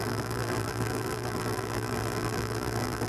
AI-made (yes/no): yes